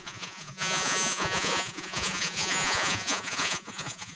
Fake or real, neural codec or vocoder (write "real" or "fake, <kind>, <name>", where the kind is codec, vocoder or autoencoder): fake, vocoder, Vocos